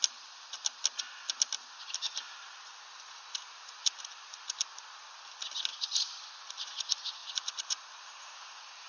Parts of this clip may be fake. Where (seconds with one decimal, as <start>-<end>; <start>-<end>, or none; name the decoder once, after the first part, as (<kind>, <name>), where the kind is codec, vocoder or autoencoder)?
7.2-8.9 (vocoder, Vocos)